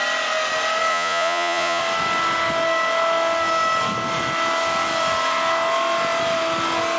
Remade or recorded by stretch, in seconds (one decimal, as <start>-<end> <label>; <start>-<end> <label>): 0.0-0.9 recorded; 0.9-1.8 remade; 1.8-7.0 recorded